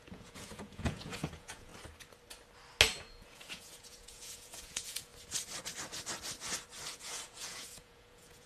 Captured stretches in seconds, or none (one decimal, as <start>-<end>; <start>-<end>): 1.7-3.0; 5.1-6.9